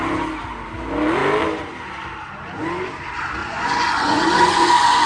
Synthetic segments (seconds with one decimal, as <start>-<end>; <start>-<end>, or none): 3.4-5.1